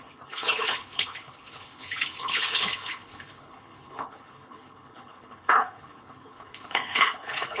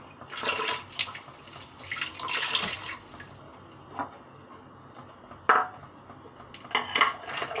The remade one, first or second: first